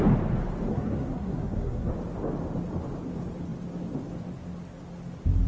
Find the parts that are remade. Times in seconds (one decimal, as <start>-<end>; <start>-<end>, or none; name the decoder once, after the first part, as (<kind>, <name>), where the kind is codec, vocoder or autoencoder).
0.7-1.9 (codec, SNAC)